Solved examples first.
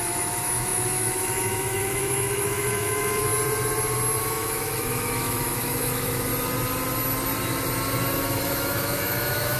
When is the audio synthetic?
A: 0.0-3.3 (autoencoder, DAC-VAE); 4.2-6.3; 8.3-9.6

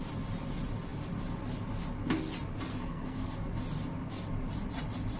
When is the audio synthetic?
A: 2.7-3.5 (codec, SNAC)

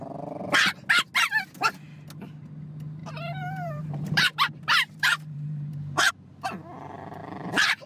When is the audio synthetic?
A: 3.0-6.1 (vocoder, BigVGAN v2); 7.2-7.9

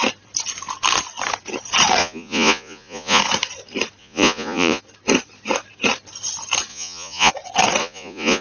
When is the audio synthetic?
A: 2.0-3.2 (vocoder, Vocos); 4.0-4.8; 6.7-7.3; 7.8-8.4

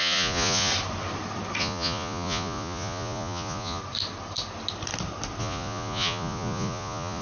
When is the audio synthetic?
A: 0.0-0.7 (vocoder, Vocos); 1.6-3.8; 5.4-7.2